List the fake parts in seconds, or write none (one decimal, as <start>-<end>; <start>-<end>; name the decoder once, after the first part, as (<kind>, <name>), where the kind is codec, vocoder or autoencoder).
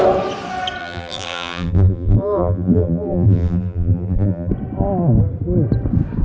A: 0.8-4.5 (vocoder, BigVGAN v2)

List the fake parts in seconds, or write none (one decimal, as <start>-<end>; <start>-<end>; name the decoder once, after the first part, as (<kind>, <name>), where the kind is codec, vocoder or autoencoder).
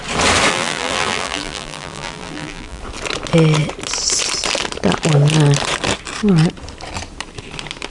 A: 0.5-2.8 (vocoder, BigVGAN v2)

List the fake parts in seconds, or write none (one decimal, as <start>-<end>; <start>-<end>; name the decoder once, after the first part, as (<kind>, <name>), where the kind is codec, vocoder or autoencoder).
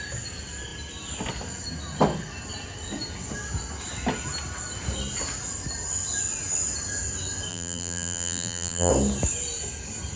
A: 7.5-8.9 (vocoder, BigVGAN v2)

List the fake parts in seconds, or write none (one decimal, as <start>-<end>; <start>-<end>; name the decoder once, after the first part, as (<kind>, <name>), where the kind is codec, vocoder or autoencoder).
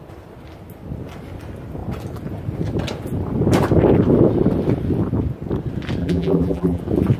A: 6.0-6.8 (vocoder, BigVGAN v2)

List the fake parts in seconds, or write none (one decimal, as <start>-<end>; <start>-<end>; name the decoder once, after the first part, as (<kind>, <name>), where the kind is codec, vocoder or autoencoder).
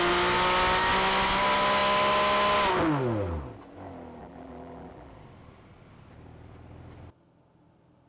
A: 4.2-5.1 (vocoder, BigVGAN v2)